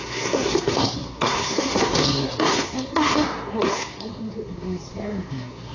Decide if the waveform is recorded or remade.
remade